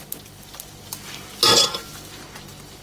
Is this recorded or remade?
recorded